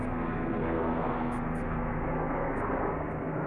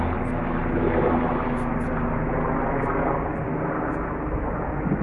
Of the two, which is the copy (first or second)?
first